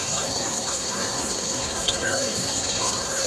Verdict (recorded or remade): remade